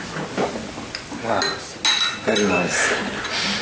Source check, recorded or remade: recorded